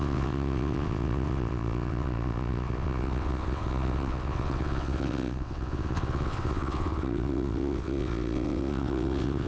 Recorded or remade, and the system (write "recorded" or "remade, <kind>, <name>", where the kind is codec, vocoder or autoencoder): remade, vocoder, WaveNeXt